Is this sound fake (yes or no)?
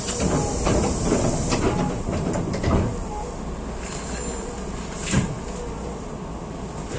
no